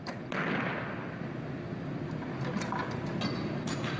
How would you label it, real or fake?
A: real